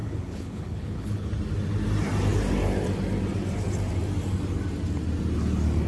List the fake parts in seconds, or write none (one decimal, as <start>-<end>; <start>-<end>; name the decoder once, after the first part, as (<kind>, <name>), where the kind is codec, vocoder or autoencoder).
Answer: 0.0-1.3 (codec, HILCodec)